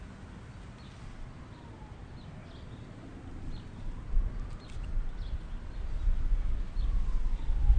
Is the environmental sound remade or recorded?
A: recorded